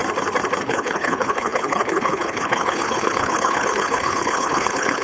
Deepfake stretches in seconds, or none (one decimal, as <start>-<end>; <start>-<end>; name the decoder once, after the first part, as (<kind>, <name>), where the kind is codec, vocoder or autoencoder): 0.6-5.0 (codec, HILCodec)